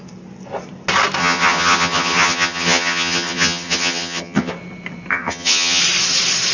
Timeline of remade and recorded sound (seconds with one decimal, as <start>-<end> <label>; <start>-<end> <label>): 0.0-1.2 recorded; 1.2-4.5 remade; 4.5-5.1 recorded; 5.1-5.8 remade; 5.8-6.5 recorded